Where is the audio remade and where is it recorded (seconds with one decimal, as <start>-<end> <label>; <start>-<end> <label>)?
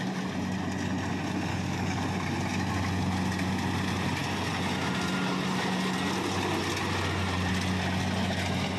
0.0-1.5 recorded; 1.5-2.0 remade; 2.0-8.8 recorded